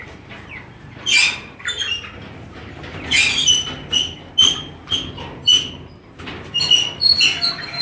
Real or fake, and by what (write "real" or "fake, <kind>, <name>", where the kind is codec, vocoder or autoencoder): real